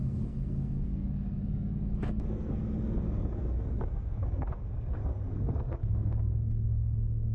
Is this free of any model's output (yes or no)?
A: no